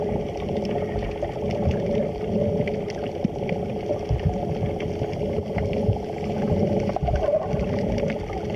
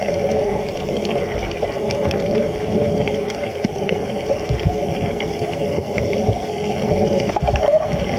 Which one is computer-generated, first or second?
second